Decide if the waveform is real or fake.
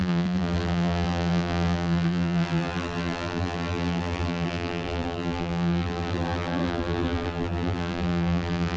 fake